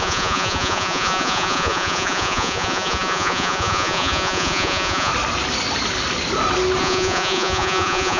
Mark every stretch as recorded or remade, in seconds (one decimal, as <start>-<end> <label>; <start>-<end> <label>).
0.0-5.1 remade; 5.1-6.8 recorded; 6.8-8.2 remade